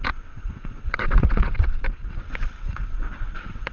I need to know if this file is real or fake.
fake